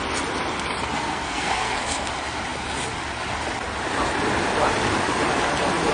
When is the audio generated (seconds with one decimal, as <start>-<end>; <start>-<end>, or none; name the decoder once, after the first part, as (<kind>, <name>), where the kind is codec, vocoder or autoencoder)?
0.9-2.1 (codec, SNAC)